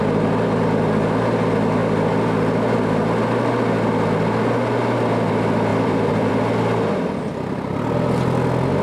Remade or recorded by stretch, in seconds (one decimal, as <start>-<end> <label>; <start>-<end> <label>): 0.0-5.7 recorded; 5.7-6.3 remade; 6.3-8.8 recorded